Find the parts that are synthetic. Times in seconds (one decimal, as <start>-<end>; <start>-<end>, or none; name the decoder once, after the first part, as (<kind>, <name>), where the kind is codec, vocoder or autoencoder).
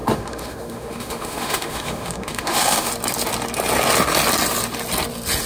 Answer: 0.0-2.9 (autoencoder, DAC-VAE)